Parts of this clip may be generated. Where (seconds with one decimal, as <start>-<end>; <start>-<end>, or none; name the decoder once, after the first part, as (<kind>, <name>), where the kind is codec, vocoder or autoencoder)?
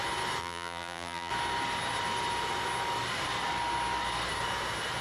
0.4-1.3 (vocoder, BigVGAN v2)